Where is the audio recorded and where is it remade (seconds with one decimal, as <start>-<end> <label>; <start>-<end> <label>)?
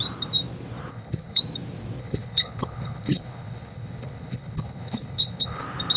0.0-0.9 recorded; 0.9-1.4 remade; 1.4-2.0 recorded; 2.0-5.6 remade; 5.6-6.0 recorded